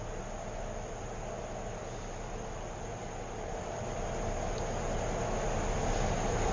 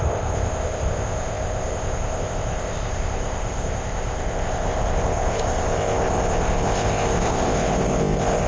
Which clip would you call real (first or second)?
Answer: first